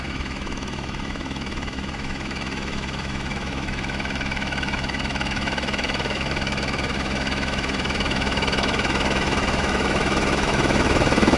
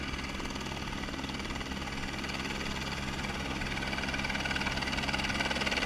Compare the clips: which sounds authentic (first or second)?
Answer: second